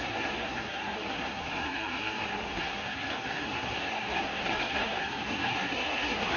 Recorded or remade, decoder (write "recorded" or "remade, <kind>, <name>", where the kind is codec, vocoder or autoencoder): remade, codec, SNAC